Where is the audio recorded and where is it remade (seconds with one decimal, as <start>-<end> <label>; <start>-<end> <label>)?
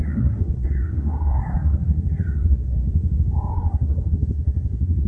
0.0-2.8 remade; 2.8-3.5 recorded; 3.5-5.1 remade